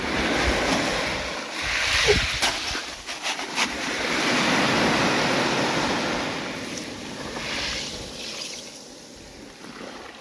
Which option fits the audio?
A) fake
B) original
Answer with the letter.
B